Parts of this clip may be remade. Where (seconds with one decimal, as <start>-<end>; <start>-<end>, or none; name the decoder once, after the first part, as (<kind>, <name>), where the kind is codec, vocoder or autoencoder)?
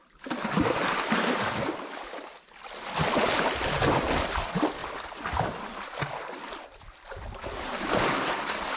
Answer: none